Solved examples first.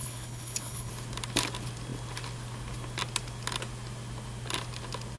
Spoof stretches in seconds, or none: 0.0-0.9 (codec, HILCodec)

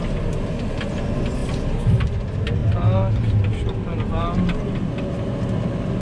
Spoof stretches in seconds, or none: none

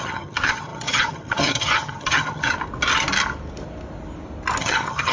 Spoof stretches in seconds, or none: 0.0-2.5 (vocoder, HiFi-GAN); 4.6-5.1